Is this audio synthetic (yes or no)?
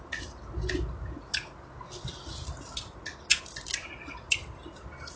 no